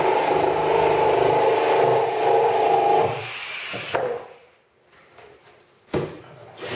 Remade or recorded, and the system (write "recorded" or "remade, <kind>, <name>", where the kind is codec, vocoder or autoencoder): remade, vocoder, BigVGAN v2